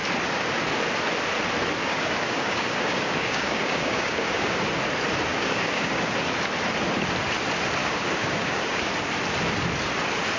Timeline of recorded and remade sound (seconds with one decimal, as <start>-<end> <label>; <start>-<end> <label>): 0.0-1.8 recorded; 1.8-4.7 remade; 4.7-5.3 recorded; 5.3-6.1 remade; 6.1-7.8 recorded; 7.8-8.9 remade; 8.9-10.4 recorded